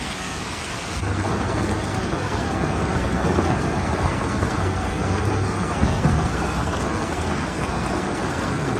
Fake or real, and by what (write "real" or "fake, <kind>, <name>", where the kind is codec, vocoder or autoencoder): fake, codec, SNAC